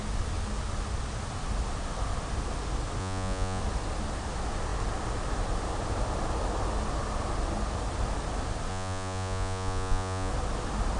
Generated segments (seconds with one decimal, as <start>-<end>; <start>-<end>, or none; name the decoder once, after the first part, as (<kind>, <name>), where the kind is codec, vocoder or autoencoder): 3.0-3.6 (vocoder, Vocos); 8.7-10.3